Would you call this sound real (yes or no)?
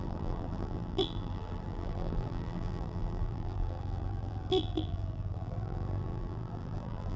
no